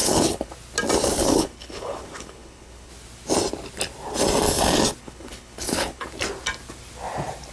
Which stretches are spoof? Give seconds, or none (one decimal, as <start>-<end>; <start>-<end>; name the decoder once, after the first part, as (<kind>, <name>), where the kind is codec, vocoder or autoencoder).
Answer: 0.0-0.5 (codec, HILCodec); 1.2-2.9; 5.0-6.1